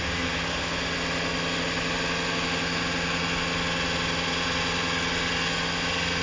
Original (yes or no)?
yes